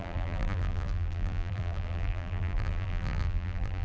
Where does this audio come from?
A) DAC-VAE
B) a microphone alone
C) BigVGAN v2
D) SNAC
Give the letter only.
C